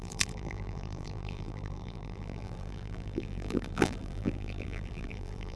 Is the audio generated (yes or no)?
yes